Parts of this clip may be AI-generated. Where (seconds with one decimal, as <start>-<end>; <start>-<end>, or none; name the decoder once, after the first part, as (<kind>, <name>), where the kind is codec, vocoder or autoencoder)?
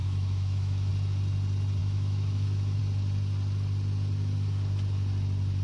0.0-0.9 (autoencoder, DAC-VAE); 1.8-2.8